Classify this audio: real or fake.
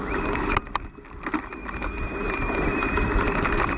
real